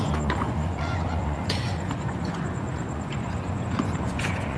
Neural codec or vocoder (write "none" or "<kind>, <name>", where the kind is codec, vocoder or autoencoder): vocoder, Vocos